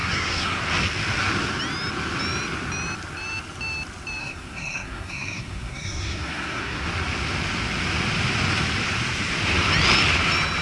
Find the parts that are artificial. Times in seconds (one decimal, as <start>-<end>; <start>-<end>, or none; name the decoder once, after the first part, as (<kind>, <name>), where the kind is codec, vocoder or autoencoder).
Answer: 0.0-0.6 (codec, SNAC); 4.2-6.9